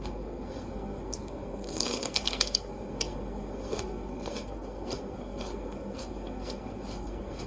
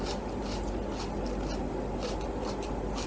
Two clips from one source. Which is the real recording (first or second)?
second